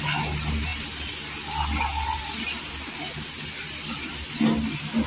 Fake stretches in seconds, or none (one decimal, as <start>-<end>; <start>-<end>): none